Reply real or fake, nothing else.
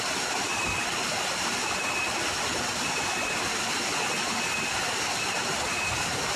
real